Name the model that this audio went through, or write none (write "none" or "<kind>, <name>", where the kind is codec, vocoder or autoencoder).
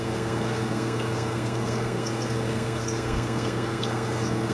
codec, SNAC